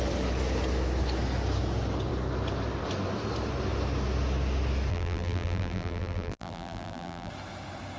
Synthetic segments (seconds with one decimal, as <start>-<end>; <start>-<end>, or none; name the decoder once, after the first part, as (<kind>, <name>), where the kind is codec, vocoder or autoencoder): 4.9-7.3 (vocoder, BigVGAN v2)